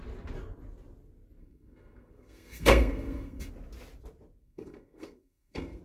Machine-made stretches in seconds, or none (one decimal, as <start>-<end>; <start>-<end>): 1.4-3.5; 4.4-5.8